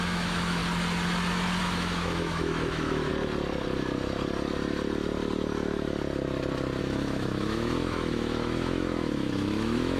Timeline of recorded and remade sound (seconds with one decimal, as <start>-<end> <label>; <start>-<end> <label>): 0.0-0.6 remade; 0.6-1.6 recorded; 1.6-3.1 remade; 3.1-6.8 recorded; 6.8-10.0 remade